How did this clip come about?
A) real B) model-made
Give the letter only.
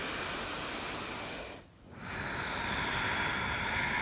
A